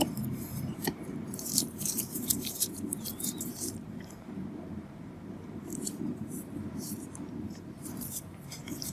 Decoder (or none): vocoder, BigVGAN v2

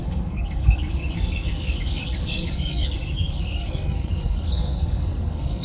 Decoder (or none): codec, SNAC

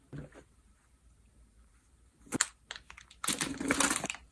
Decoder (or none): none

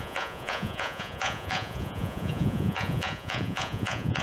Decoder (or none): vocoder, Vocos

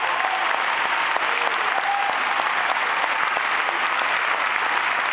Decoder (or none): none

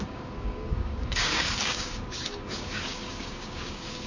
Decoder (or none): codec, DAC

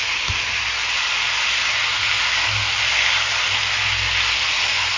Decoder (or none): none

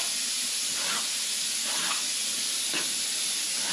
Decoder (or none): vocoder, BigVGAN v2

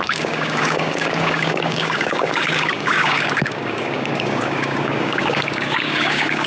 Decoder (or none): codec, DAC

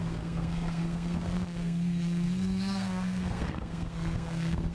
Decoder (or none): codec, SNAC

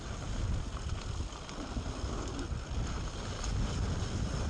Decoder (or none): none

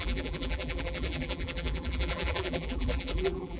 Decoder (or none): vocoder, BigVGAN v2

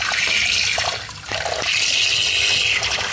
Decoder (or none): none